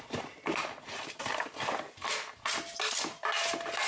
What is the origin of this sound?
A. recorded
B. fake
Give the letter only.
A